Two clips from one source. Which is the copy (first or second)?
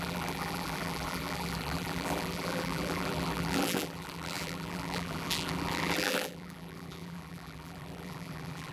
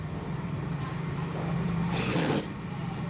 first